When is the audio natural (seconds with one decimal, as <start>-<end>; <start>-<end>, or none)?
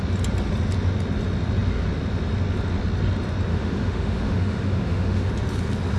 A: 0.0-3.5; 5.3-6.0